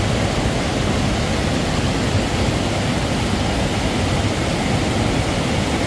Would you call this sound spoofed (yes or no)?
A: no